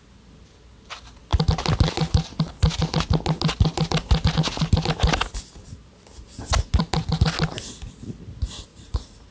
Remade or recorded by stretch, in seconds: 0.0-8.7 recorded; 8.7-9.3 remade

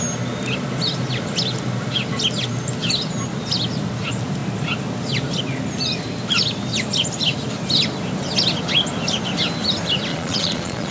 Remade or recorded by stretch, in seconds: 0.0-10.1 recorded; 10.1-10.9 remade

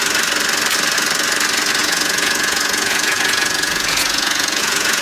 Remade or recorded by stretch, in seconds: 0.0-1.8 recorded; 1.8-5.0 remade

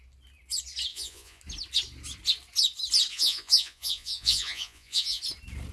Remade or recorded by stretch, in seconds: 0.0-0.9 recorded; 0.9-1.4 remade; 1.4-3.1 recorded; 3.1-5.2 remade; 5.2-5.7 recorded

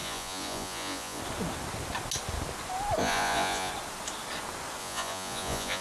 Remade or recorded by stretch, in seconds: 0.0-1.2 remade; 1.2-3.0 recorded; 3.0-3.7 remade; 3.7-4.8 recorded; 4.8-5.8 remade

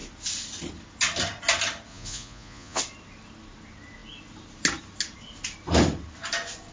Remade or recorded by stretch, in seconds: 0.0-1.9 recorded; 1.9-2.8 remade; 2.8-6.7 recorded

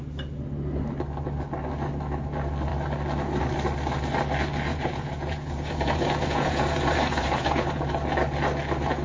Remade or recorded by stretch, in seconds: 0.0-4.7 recorded; 4.7-7.9 remade; 7.9-9.0 recorded

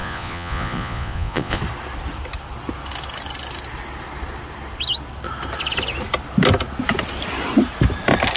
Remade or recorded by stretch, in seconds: 0.0-1.6 remade; 1.6-8.4 recorded